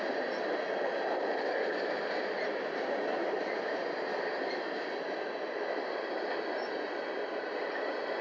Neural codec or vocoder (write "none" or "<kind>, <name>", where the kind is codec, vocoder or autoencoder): none